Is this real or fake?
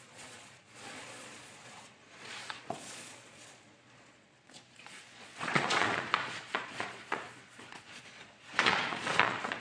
fake